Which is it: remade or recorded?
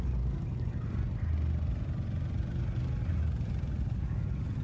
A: recorded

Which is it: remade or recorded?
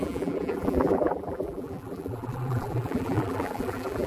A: remade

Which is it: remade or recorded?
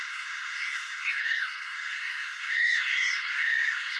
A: remade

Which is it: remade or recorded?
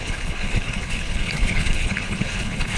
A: remade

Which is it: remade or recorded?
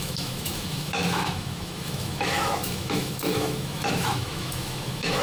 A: remade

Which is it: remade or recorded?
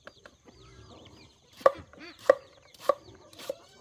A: remade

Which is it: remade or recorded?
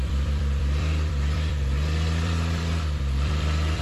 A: remade